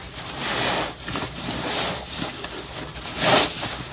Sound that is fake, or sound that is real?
fake